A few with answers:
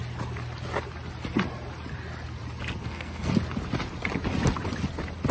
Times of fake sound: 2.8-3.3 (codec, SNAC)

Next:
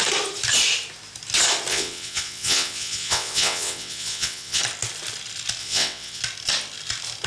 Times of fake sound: 1.7-4.6 (vocoder, WaveNeXt); 5.6-6.2

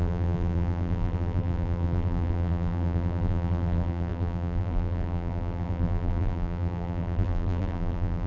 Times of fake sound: 0.0-8.3 (vocoder, BigVGAN v2)

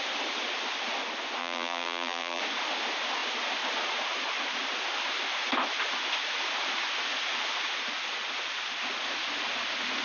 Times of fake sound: 1.4-2.4 (vocoder, BigVGAN v2)

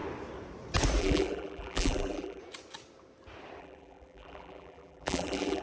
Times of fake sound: 1.0-2.4 (vocoder, BigVGAN v2); 3.6-5.6

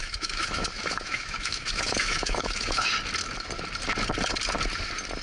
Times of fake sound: 0.0-2.9 (autoencoder, DAC-VAE)

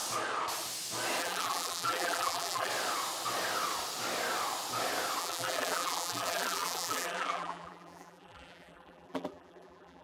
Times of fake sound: 1.2-2.7 (vocoder, BigVGAN v2); 5.2-10.0

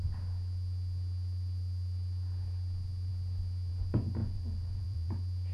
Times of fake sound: 4.2-5.1 (vocoder, Vocos)